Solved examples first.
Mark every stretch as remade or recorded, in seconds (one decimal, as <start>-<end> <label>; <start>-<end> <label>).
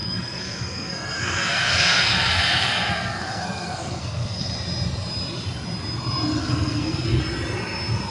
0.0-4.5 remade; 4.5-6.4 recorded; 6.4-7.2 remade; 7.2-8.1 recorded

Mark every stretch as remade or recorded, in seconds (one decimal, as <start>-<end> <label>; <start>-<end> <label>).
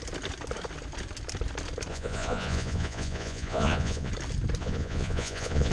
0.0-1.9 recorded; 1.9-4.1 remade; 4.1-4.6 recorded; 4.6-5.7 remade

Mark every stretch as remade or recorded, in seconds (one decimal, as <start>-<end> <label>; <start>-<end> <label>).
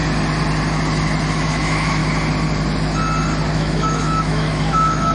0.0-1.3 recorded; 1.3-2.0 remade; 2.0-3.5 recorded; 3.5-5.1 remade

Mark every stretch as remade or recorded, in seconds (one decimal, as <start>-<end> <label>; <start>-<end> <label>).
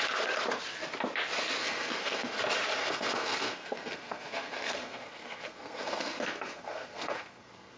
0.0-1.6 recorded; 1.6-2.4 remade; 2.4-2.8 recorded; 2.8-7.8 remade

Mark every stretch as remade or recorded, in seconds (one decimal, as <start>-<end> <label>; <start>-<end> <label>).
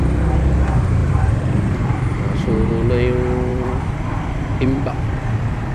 0.0-1.0 recorded; 1.0-2.7 remade; 2.7-3.5 recorded; 3.5-5.3 remade; 5.3-5.7 recorded